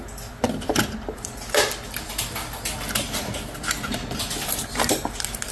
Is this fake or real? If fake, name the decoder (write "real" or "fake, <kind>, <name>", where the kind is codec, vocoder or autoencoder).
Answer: real